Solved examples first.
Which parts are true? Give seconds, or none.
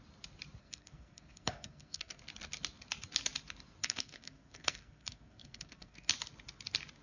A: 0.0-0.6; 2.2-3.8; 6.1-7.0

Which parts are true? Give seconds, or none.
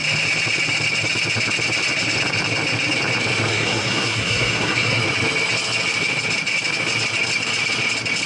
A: 0.0-3.5; 5.0-8.3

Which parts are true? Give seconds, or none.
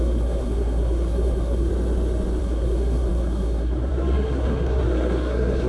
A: 1.7-2.4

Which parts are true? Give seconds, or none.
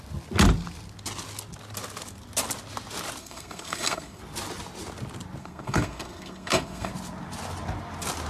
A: 0.0-3.2; 4.2-5.4; 6.9-8.3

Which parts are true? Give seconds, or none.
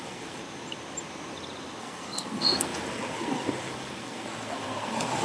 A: 0.4-1.8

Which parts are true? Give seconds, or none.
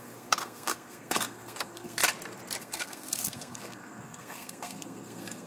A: 2.0-2.6